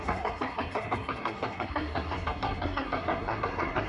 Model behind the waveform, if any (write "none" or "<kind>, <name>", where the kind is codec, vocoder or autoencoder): codec, SNAC